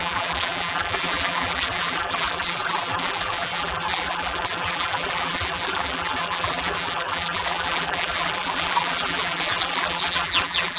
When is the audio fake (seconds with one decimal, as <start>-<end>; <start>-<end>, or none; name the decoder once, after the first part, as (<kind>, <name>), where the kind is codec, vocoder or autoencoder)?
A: 0.0-10.8 (vocoder, BigVGAN v2)